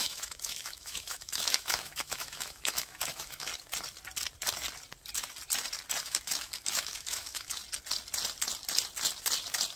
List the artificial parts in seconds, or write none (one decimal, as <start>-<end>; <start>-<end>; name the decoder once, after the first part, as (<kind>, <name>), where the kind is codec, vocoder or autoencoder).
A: 0.0-3.5 (autoencoder, DAC-VAE); 6.0-7.6